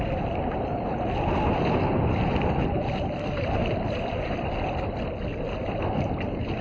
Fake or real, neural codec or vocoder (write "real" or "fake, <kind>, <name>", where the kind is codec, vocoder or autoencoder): real